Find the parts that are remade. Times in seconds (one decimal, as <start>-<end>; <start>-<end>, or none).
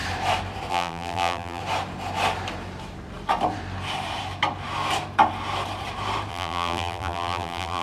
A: 0.7-1.6; 6.3-7.8